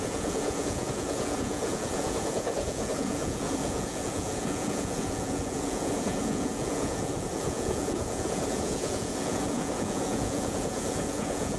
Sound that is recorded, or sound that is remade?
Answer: remade